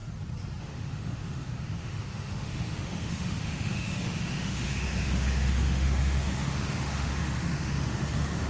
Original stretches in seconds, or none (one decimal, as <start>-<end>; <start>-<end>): 0.0-0.6